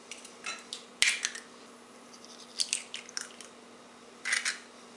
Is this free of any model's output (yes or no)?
yes